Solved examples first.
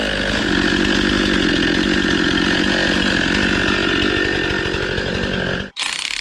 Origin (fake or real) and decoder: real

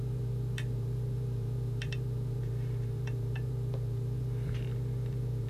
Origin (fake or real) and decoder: fake, vocoder, BigVGAN v2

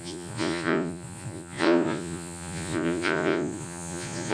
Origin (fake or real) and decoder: fake, vocoder, Vocos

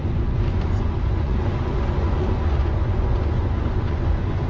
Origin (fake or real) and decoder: fake, vocoder, Vocos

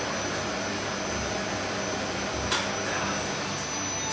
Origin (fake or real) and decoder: real